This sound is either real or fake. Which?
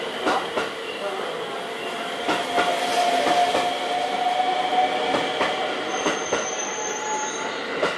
real